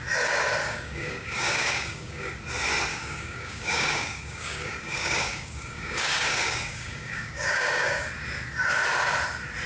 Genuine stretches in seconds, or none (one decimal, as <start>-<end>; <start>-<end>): 0.0-0.6; 2.3-2.9; 8.1-9.7